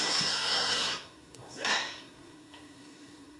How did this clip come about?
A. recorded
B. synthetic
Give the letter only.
B